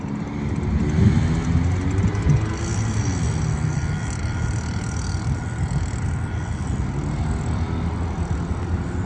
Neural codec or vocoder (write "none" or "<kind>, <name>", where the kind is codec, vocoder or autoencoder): none